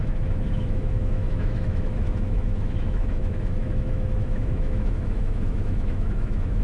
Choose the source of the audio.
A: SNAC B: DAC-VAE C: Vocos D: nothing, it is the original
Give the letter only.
B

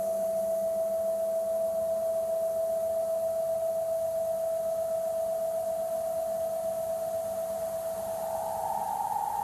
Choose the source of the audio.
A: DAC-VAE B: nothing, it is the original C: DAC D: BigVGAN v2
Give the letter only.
B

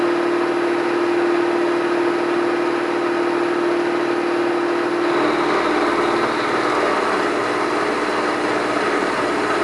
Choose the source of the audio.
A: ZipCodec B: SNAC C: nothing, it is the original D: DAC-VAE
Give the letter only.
C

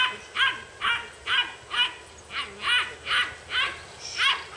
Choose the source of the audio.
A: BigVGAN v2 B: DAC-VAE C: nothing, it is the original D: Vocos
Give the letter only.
C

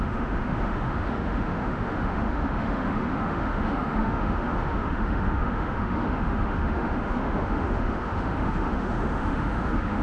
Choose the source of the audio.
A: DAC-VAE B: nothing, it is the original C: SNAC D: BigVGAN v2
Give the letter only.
A